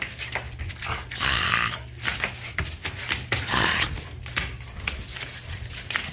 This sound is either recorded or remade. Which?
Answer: recorded